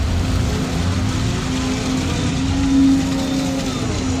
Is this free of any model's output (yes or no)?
yes